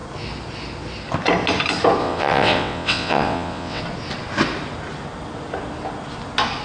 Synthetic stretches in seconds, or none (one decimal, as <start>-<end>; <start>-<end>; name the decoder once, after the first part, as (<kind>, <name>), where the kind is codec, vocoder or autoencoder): 2.0-3.8 (vocoder, WaveNeXt)